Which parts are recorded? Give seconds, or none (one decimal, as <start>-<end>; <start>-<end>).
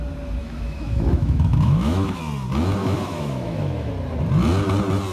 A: 0.0-0.4; 2.2-2.8; 3.9-5.1